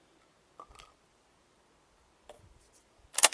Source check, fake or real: real